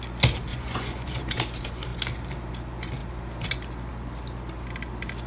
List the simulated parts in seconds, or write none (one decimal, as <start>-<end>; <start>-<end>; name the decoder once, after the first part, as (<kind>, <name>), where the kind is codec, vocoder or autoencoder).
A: 0.5-1.4 (vocoder, Vocos)